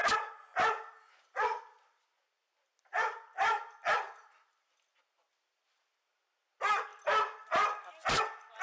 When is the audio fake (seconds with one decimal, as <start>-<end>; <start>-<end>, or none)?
none